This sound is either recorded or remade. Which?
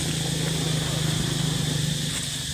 recorded